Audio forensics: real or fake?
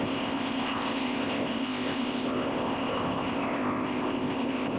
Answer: fake